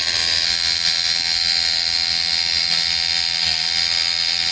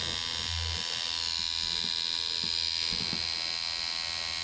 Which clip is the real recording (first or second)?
second